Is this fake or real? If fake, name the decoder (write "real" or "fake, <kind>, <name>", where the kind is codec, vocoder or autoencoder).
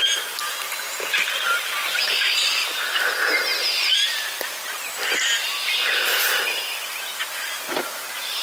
real